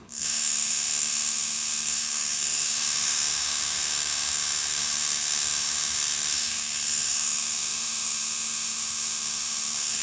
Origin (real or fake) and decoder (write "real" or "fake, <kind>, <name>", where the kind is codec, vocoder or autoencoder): fake, autoencoder, DAC-VAE